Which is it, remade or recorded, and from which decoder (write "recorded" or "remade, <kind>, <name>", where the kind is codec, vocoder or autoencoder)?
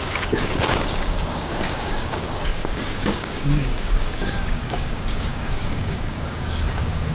remade, codec, DAC